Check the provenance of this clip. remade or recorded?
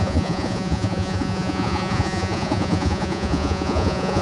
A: remade